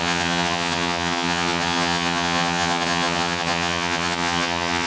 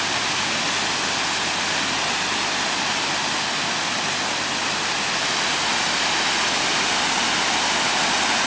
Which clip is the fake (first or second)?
first